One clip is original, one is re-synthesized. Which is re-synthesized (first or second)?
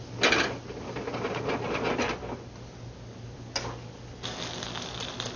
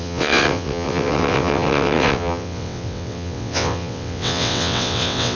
second